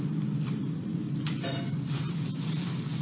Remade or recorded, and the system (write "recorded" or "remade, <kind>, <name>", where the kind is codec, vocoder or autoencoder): remade, vocoder, BigVGAN v2